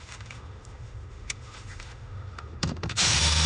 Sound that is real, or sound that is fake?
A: fake